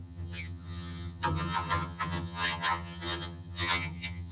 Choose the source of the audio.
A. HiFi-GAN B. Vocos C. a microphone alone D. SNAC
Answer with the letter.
A